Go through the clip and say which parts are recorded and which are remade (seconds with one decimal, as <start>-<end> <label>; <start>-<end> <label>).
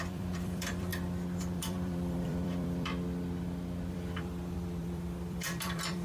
0.0-0.9 remade; 0.9-1.4 recorded; 1.4-2.9 remade; 2.9-3.9 recorded; 3.9-6.0 remade